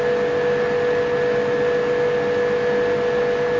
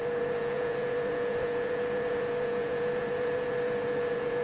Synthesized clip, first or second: second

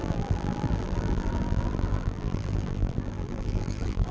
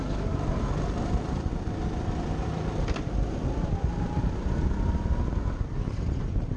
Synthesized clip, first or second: first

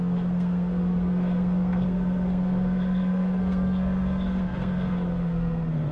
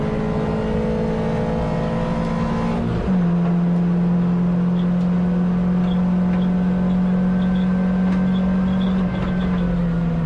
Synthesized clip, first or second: first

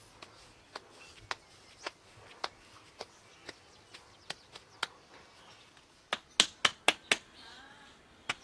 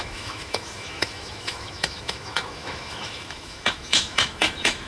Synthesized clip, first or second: second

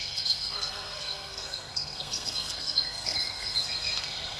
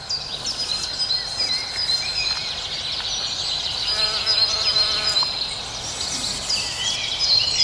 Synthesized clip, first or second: first